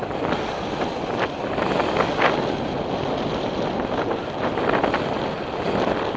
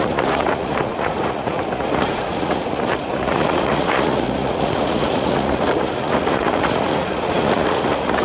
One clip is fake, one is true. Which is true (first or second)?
first